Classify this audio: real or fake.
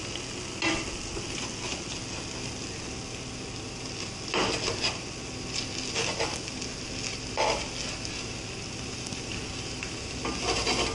real